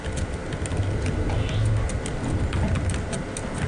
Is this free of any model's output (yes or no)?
yes